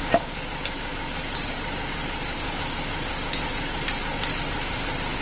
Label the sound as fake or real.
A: real